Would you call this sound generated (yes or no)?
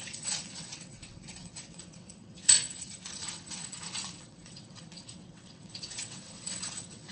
yes